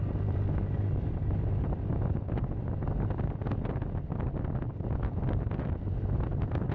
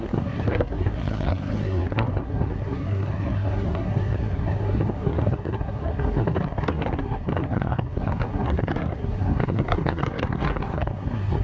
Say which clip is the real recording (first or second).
first